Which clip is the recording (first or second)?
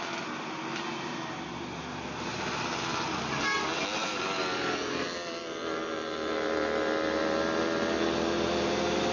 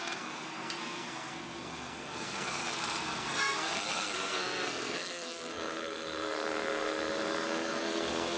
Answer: first